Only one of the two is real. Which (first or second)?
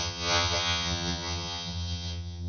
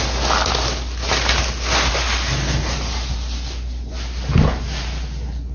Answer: second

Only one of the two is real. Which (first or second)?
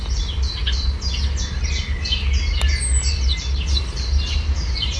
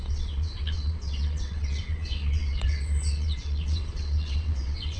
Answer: first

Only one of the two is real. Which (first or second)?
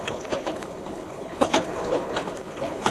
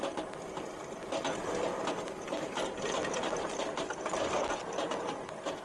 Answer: second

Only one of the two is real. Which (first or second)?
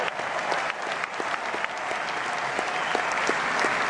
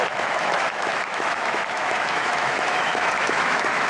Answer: first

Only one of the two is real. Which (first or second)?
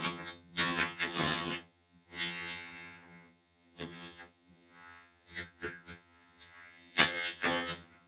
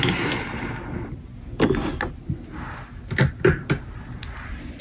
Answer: second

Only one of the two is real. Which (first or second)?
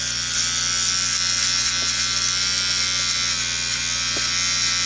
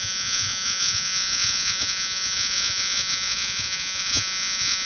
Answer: first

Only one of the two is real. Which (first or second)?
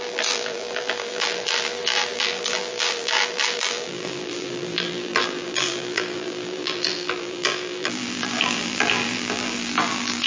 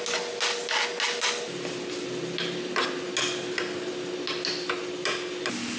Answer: second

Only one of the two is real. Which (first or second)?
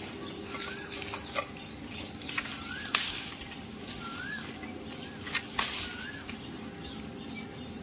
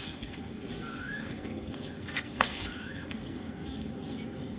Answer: first